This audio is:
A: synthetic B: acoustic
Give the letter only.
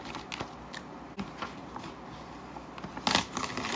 B